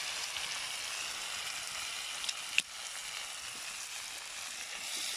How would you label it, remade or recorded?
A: recorded